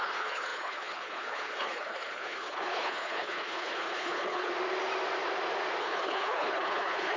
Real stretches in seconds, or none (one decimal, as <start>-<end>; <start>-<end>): 4.5-5.8